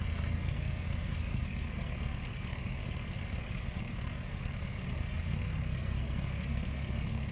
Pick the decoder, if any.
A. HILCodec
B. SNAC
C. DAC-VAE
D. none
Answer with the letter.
B